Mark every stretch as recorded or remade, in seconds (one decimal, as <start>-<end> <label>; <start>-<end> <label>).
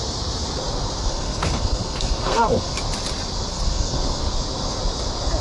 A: 0.0-1.0 recorded; 1.0-2.8 remade; 2.8-3.5 recorded; 3.5-4.2 remade; 4.2-5.4 recorded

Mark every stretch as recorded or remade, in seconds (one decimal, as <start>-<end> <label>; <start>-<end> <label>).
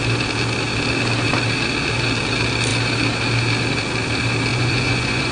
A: 0.0-4.5 recorded; 4.5-5.3 remade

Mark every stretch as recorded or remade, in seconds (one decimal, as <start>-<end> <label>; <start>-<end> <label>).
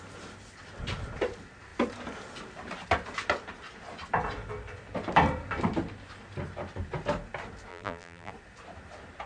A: 0.0-7.7 recorded; 7.7-8.3 remade; 8.3-9.3 recorded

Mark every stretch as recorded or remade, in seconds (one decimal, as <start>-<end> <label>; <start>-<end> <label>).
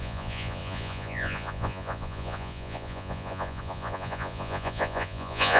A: 0.0-5.6 remade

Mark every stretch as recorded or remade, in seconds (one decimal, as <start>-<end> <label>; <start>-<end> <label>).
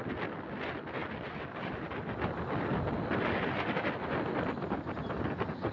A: 0.0-5.7 recorded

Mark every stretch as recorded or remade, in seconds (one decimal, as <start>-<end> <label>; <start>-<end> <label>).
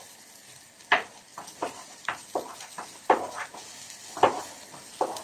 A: 0.0-5.2 recorded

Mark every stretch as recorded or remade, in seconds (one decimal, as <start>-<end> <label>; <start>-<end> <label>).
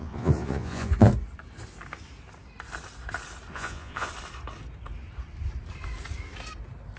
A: 0.0-1.1 remade; 1.1-3.5 recorded; 3.5-4.1 remade; 4.1-7.0 recorded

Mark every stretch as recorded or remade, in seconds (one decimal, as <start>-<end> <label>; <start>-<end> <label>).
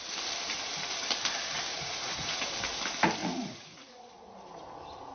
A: 0.0-1.7 recorded; 1.7-2.5 remade; 2.5-3.2 recorded; 3.2-4.1 remade; 4.1-5.1 recorded